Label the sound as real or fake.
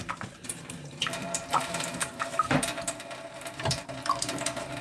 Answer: fake